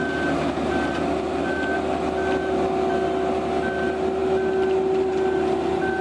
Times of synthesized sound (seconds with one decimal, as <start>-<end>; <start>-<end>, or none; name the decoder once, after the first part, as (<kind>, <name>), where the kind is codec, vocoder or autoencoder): none